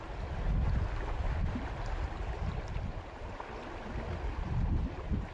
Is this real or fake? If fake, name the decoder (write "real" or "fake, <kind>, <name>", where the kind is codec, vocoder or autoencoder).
fake, vocoder, BigVGAN v2